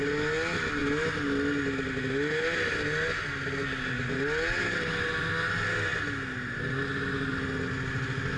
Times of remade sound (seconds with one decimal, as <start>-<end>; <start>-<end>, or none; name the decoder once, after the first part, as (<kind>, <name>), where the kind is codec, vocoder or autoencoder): none